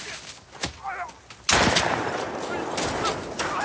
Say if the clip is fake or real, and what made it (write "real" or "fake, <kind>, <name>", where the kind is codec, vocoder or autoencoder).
real